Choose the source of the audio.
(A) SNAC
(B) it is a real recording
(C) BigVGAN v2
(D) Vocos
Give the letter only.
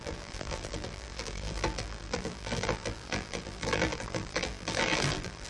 C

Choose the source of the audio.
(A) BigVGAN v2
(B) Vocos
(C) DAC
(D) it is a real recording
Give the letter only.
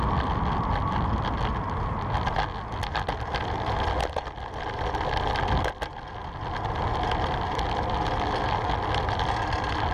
D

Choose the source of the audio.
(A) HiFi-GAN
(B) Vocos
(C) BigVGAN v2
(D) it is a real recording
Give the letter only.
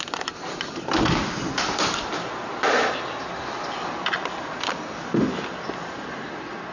C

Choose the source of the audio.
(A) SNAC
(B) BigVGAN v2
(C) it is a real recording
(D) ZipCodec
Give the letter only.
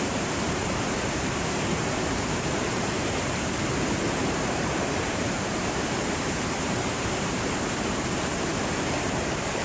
B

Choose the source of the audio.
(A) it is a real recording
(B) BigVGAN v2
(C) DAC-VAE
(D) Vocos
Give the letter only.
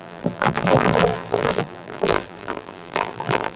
B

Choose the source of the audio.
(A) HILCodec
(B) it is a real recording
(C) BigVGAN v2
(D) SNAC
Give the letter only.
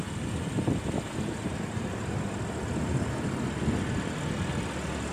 B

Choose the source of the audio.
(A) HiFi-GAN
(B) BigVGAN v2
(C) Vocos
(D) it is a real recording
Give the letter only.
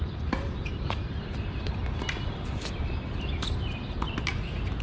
D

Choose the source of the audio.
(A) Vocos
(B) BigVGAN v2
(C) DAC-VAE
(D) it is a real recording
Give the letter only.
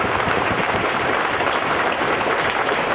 B